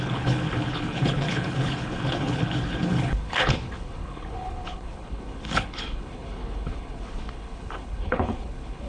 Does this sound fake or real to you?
fake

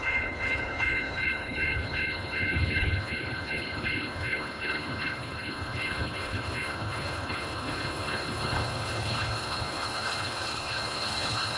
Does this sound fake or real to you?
fake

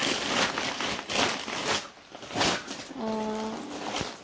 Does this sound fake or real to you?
real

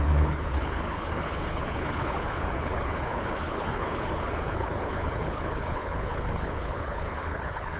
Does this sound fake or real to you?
fake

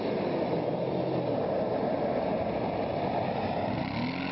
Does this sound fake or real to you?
real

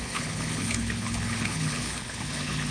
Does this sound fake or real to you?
fake